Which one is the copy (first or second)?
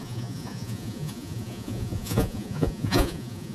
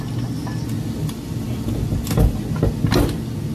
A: first